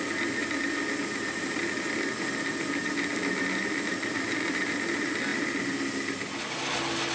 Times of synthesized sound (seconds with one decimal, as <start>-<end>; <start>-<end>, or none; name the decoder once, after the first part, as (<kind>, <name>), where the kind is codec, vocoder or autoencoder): none